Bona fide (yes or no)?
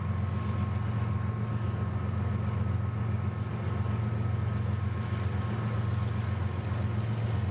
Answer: yes